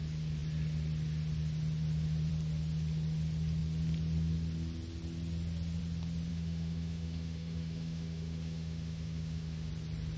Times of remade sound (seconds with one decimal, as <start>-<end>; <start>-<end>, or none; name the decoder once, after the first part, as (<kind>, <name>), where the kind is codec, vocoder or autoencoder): 6.3-9.7 (autoencoder, DAC-VAE)